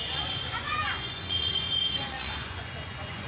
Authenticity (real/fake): fake